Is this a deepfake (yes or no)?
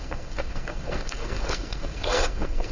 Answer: yes